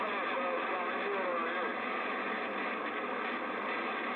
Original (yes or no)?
yes